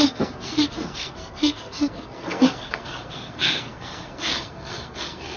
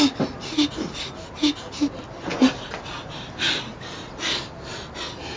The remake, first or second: first